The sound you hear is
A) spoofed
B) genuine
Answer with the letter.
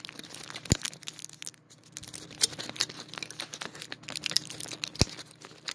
B